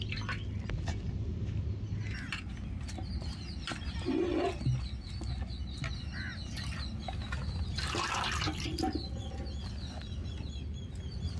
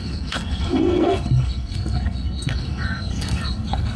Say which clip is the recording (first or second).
first